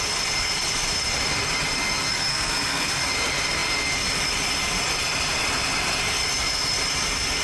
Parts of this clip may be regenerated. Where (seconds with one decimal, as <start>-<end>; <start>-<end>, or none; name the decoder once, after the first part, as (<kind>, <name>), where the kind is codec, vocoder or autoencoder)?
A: 2.3-2.9 (codec, SNAC)

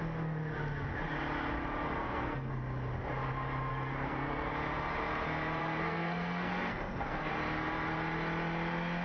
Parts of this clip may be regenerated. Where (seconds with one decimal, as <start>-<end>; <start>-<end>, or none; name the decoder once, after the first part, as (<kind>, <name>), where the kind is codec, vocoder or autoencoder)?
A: 2.0-2.5 (codec, SNAC); 3.7-4.5; 5.6-7.3

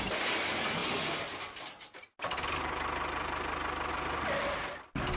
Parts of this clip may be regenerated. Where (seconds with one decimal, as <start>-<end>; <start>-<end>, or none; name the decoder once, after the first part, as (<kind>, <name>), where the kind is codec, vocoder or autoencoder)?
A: none

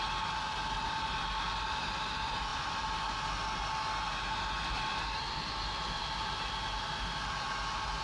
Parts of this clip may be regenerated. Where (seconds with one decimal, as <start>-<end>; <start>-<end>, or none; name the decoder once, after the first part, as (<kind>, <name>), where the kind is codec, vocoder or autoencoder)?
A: none

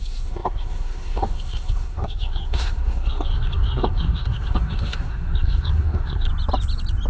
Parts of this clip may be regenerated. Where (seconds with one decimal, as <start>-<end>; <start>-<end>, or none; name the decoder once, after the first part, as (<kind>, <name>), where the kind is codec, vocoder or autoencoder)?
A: 0.0-6.3 (codec, SNAC)

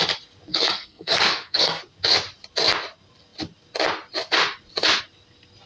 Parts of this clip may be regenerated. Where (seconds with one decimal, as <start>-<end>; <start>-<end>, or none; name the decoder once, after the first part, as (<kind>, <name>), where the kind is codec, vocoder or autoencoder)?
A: 0.5-1.8 (codec, SNAC)